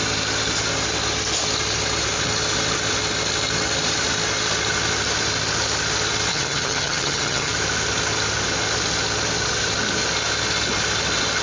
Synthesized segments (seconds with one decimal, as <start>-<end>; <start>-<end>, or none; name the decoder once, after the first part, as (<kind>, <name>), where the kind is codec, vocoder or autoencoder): 6.3-7.5 (vocoder, HiFi-GAN)